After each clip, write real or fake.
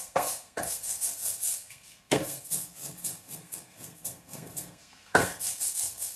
fake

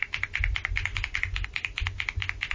real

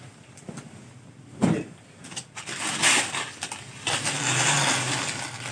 real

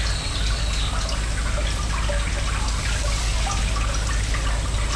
real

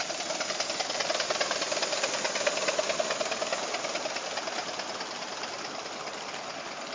real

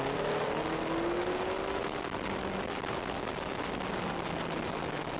real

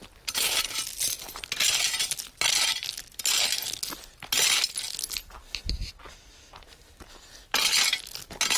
real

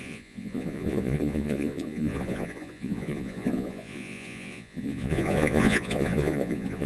fake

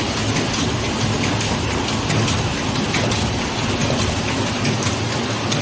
real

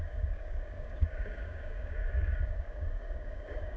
fake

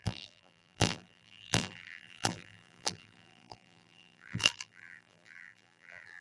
fake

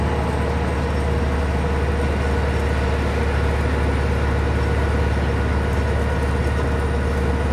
real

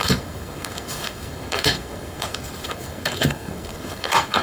fake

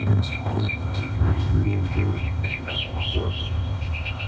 fake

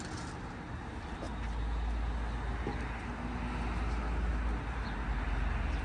real